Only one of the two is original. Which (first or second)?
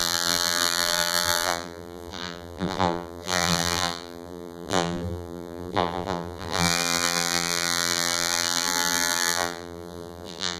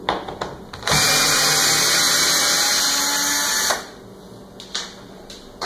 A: second